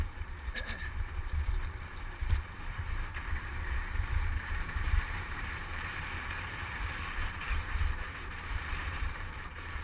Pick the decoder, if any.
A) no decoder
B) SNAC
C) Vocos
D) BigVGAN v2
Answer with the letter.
D